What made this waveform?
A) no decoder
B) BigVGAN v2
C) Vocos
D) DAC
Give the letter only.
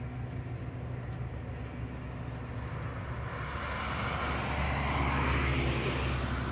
A